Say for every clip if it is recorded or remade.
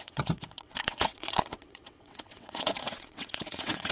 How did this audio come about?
remade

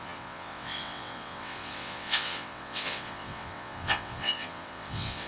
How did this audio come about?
remade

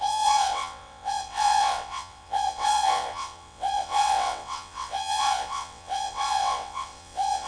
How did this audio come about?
remade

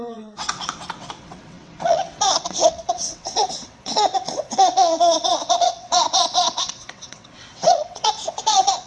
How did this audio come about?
remade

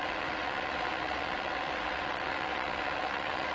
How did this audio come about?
remade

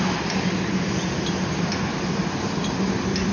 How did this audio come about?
recorded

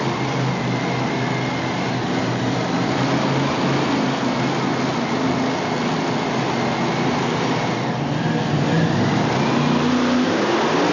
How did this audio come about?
recorded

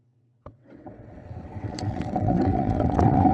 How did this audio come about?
remade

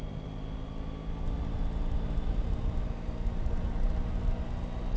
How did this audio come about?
recorded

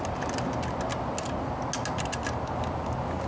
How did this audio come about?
recorded